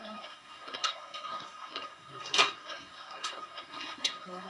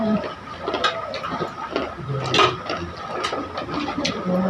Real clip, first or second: second